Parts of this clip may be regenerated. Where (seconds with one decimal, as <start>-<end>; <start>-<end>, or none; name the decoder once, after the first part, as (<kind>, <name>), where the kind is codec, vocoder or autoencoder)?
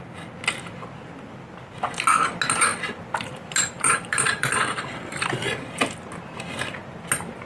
2.7-4.8 (vocoder, BigVGAN v2)